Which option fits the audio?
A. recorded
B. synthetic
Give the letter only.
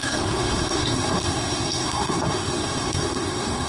B